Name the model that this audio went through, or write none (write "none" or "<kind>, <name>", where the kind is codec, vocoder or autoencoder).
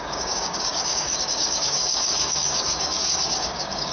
codec, DAC